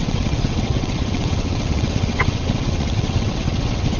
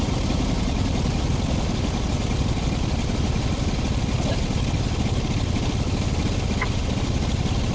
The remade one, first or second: first